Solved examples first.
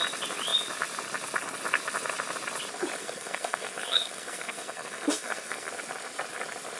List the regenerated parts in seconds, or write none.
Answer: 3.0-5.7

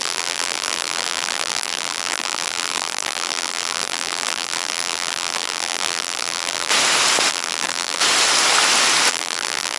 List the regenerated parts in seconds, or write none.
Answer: 0.0-6.7; 7.3-8.0; 9.1-9.8